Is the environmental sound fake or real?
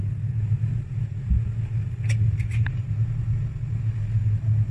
real